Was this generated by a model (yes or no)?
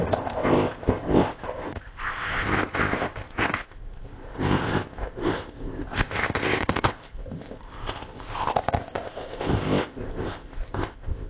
yes